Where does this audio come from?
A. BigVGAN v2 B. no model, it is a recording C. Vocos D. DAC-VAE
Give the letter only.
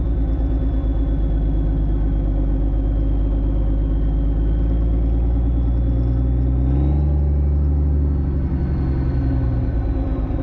B